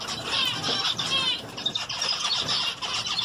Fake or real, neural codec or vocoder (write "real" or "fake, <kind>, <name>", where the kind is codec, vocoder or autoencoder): fake, vocoder, BigVGAN v2